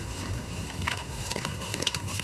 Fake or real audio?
fake